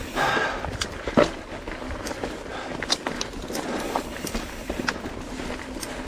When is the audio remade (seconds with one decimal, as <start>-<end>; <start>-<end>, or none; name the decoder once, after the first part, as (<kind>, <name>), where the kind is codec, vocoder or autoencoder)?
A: none